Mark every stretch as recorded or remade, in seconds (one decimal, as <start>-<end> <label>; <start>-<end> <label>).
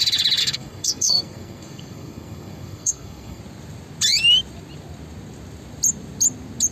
0.0-0.4 recorded; 0.4-3.4 remade; 3.4-6.7 recorded